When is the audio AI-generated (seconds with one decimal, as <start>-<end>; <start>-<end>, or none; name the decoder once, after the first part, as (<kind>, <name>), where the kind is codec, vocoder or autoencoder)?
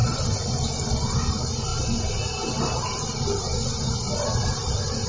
none